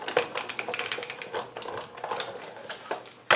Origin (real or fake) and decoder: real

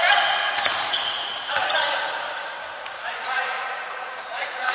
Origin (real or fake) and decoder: fake, vocoder, Vocos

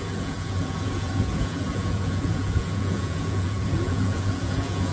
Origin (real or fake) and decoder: fake, vocoder, Vocos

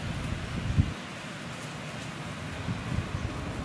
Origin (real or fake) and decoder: real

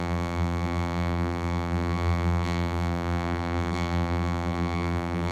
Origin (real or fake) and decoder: fake, vocoder, BigVGAN v2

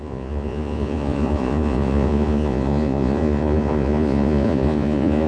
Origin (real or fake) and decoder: fake, vocoder, Vocos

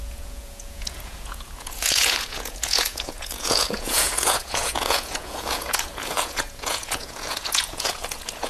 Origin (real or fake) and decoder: fake, vocoder, Vocos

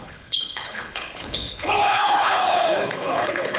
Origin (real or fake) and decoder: fake, codec, HILCodec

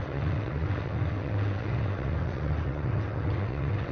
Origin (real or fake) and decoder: fake, vocoder, WaveNeXt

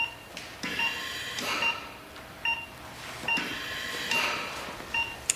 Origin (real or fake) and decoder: real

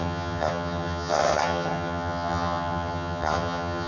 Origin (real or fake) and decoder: fake, vocoder, HiFi-GAN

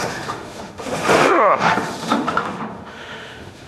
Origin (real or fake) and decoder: fake, autoencoder, DAC-VAE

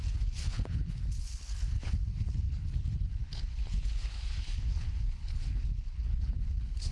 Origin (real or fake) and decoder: fake, codec, HILCodec